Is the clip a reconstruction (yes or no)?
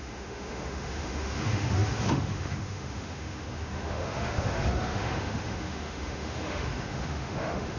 yes